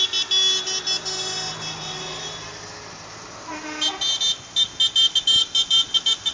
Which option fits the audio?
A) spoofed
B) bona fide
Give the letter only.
B